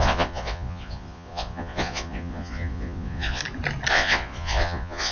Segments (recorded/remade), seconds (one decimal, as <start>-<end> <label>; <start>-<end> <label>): 0.0-3.4 remade; 3.4-3.9 recorded; 3.9-5.1 remade